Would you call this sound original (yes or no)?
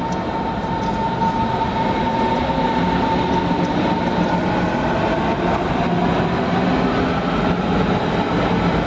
yes